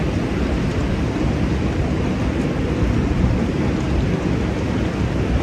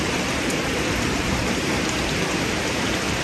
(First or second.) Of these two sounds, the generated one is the second